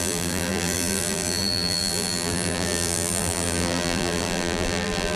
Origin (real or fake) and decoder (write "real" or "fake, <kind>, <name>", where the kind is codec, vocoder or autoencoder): fake, vocoder, BigVGAN v2